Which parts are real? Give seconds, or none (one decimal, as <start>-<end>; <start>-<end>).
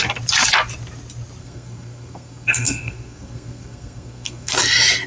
0.0-1.4; 4.5-5.1